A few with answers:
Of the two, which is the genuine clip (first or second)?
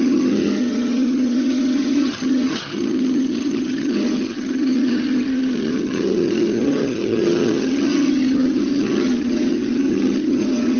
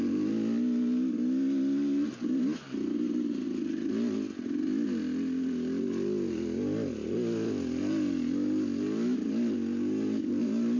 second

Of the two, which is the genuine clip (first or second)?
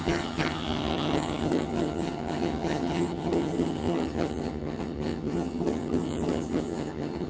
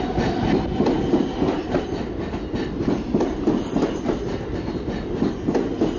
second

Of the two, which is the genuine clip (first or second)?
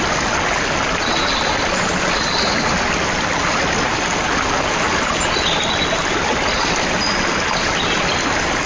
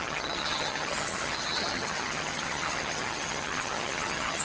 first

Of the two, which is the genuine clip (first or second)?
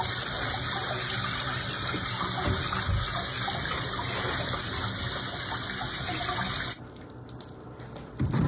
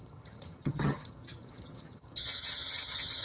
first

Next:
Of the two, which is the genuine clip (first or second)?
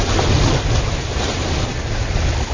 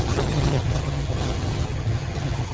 first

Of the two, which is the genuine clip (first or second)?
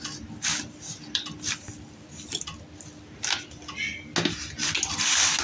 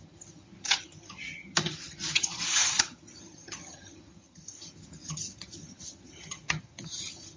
first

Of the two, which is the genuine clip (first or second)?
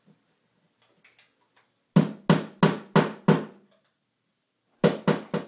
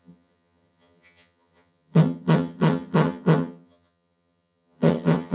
first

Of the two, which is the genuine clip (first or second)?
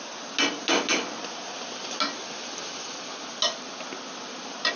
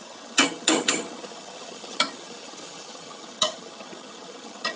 first